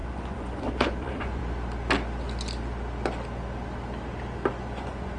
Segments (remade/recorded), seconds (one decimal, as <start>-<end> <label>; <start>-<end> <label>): 0.0-1.4 remade; 1.4-4.5 recorded; 4.5-5.2 remade